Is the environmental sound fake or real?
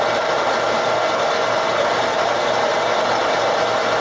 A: real